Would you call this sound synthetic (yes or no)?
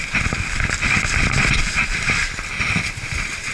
no